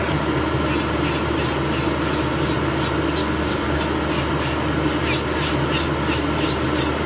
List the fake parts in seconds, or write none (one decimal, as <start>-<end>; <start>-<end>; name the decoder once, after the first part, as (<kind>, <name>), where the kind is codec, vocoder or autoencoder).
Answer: 3.2-3.8 (codec, DAC)